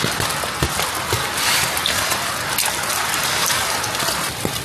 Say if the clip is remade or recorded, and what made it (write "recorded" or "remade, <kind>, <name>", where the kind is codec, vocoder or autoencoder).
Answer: recorded